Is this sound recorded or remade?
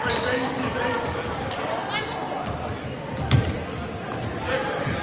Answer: recorded